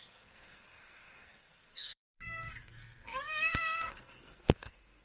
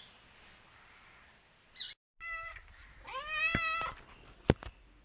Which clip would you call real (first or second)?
second